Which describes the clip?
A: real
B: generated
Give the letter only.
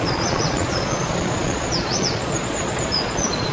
B